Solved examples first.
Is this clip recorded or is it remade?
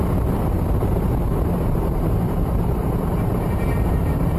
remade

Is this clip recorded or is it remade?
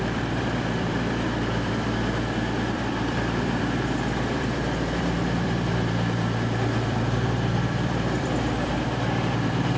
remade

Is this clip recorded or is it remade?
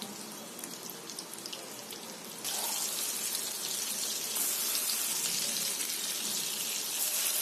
recorded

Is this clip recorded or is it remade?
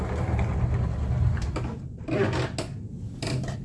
recorded